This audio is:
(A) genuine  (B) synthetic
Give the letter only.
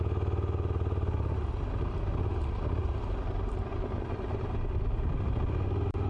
A